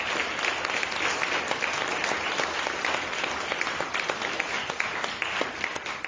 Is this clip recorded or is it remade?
recorded